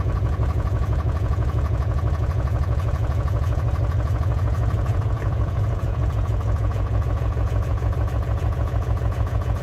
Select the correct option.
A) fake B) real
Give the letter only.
A